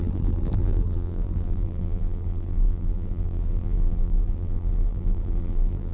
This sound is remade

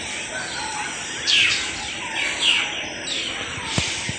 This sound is remade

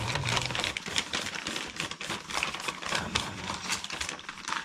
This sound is remade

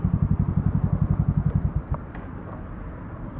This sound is remade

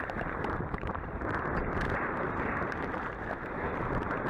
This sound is remade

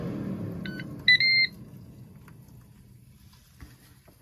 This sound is recorded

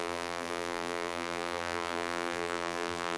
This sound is remade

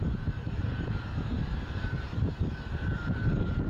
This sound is remade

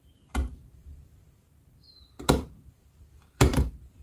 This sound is remade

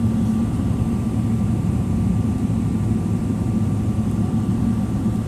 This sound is remade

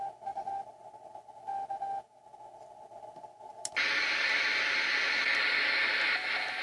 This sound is recorded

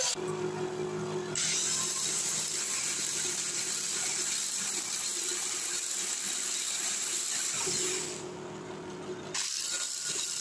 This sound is recorded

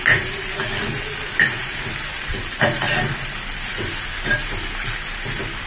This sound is recorded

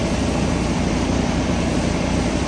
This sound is remade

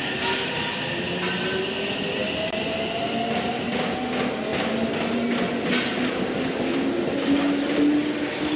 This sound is recorded